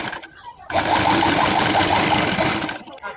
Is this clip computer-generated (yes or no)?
yes